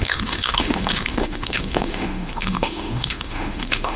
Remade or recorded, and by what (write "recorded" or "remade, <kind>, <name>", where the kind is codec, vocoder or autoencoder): remade, autoencoder, DAC-VAE